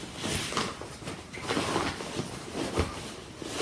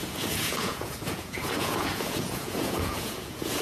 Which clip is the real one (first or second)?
first